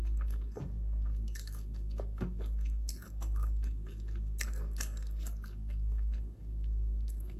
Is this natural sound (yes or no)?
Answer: no